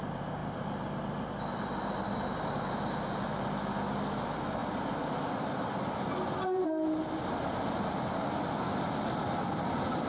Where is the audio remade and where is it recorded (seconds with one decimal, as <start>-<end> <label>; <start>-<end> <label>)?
0.0-10.1 recorded